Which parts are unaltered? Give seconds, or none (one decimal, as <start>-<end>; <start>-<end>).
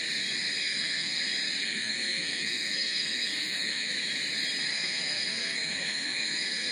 0.0-0.6; 1.2-1.6; 3.9-4.7